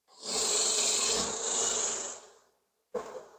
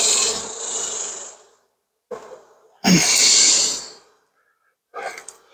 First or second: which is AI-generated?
first